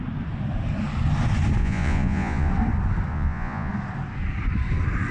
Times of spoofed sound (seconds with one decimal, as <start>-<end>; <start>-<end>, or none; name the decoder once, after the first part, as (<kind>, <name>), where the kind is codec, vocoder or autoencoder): 1.6-2.5 (vocoder, Vocos); 3.1-3.7